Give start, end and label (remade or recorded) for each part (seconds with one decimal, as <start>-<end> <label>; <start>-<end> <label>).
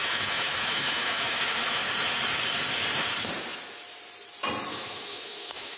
0.0-1.8 remade; 1.8-4.7 recorded; 4.7-5.8 remade